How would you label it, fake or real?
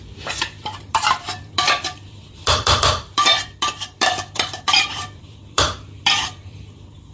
fake